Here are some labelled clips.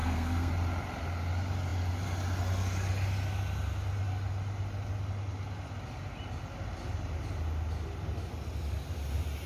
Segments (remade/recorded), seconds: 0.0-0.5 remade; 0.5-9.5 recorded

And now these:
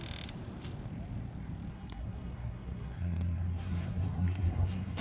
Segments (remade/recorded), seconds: 0.0-1.7 recorded; 1.7-5.0 remade

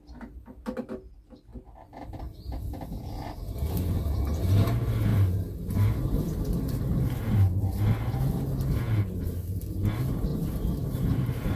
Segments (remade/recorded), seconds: 0.0-10.3 recorded; 10.3-11.6 remade

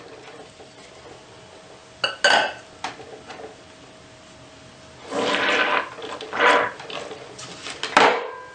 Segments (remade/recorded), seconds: 0.0-8.5 recorded

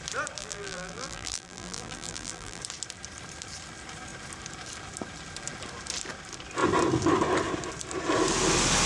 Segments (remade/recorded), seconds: 0.0-0.4 recorded; 0.4-2.6 remade; 2.6-8.9 recorded